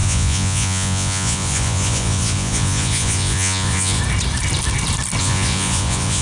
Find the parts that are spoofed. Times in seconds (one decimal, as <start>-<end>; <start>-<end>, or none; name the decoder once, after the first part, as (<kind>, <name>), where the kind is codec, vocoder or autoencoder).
0.0-4.0 (vocoder, Vocos); 5.2-6.2